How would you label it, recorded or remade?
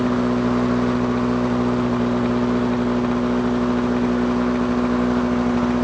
recorded